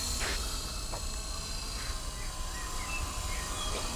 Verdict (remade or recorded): recorded